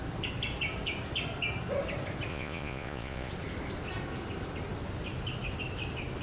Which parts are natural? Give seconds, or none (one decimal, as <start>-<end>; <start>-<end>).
0.0-2.3; 3.3-6.2